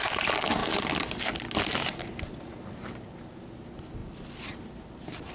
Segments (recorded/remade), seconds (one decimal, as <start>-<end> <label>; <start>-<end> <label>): 0.0-5.3 recorded